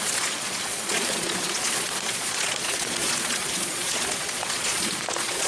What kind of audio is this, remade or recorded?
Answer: remade